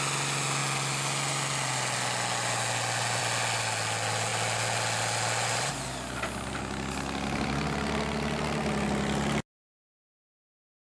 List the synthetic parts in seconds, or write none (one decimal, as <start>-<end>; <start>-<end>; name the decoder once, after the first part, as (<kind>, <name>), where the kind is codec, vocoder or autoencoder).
none